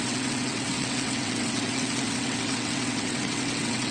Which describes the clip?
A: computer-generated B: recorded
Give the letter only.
A